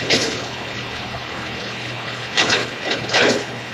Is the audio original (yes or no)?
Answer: no